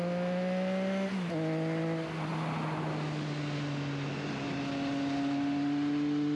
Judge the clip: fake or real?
real